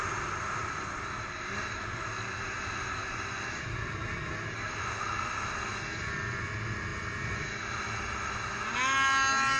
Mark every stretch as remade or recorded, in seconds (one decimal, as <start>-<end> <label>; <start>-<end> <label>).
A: 0.0-9.6 recorded